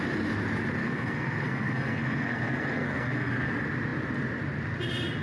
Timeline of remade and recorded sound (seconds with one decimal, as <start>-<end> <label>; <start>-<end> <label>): 0.0-0.8 recorded; 0.8-3.5 remade; 3.5-5.2 recorded